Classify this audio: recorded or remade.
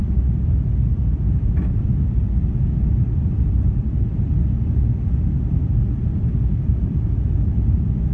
recorded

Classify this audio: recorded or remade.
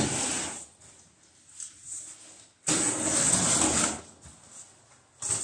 recorded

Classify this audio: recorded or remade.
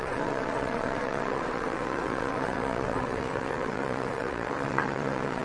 remade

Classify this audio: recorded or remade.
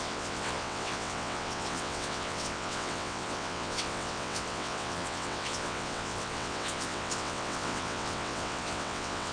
remade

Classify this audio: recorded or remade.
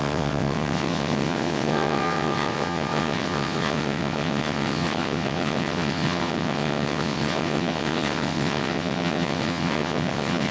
remade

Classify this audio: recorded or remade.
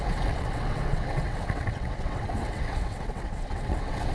remade